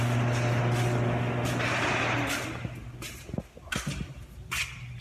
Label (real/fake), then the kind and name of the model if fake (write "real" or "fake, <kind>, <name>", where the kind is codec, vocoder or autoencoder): real